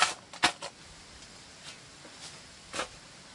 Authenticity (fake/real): real